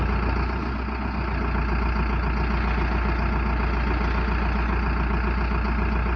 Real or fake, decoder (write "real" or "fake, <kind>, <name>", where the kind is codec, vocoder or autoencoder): real